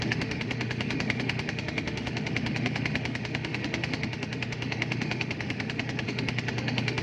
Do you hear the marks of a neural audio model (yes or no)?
yes